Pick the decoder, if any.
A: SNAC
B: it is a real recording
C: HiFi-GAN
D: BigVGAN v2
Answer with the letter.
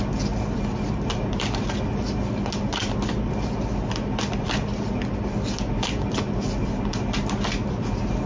B